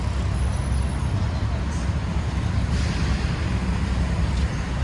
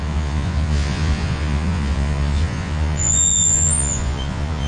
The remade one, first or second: second